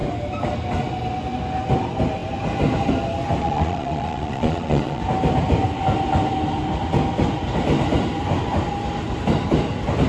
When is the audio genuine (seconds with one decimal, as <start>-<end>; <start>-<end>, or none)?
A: 0.0-3.4; 5.0-10.1